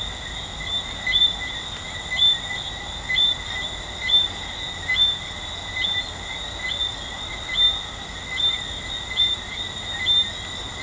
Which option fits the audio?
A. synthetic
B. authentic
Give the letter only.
B